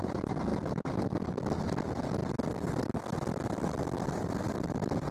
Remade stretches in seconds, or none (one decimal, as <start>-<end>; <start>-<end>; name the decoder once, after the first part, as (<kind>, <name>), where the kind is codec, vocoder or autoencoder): none